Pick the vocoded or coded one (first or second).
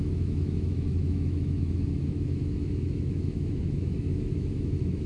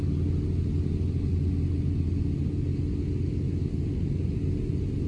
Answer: first